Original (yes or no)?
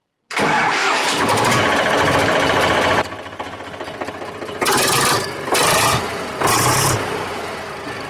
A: no